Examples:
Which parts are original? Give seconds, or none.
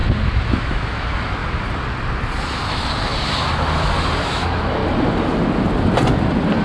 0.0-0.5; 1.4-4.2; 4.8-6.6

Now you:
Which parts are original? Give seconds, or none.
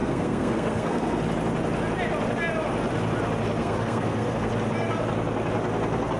1.2-3.6; 4.5-6.2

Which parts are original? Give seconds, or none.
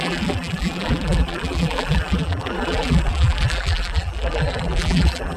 none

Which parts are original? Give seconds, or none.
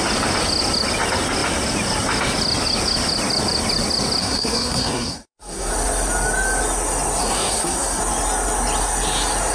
0.0-4.2; 5.7-7.2; 8.0-9.5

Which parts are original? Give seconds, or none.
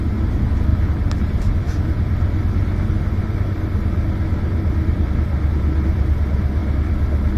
0.0-7.4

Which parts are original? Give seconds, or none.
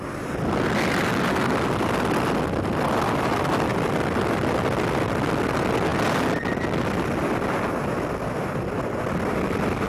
0.0-9.9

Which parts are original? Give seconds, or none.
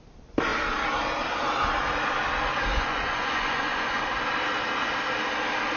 0.0-2.7; 4.0-5.8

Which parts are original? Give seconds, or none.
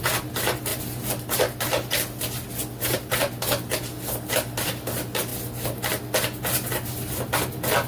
0.0-7.9